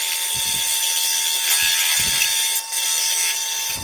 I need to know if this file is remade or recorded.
recorded